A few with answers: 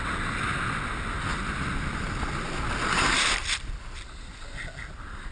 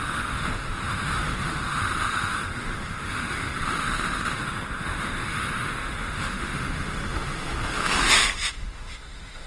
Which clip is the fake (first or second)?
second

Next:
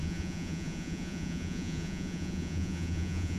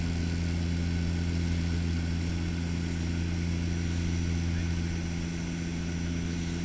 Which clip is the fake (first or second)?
first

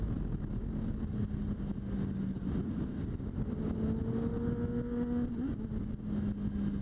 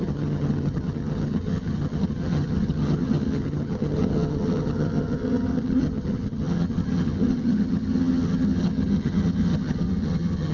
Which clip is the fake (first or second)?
second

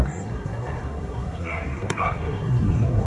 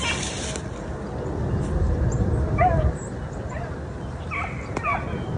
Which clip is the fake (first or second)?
first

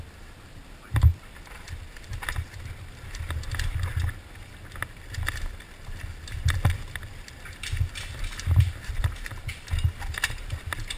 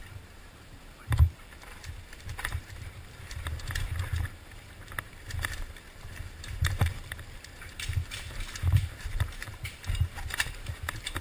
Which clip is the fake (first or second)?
second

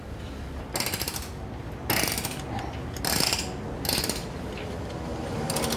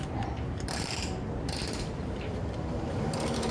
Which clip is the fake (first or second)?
second